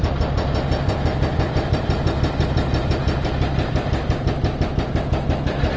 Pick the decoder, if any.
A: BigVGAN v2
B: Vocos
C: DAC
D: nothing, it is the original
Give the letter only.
A